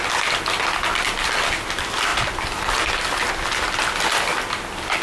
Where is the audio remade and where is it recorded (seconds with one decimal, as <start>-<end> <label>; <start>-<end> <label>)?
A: 0.0-5.0 recorded